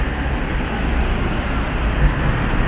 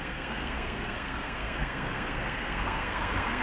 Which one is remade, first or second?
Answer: second